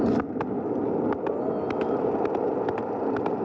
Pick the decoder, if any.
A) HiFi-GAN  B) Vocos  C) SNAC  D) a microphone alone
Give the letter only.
D